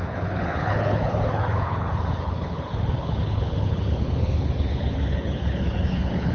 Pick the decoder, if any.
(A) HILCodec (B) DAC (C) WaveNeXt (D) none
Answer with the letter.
A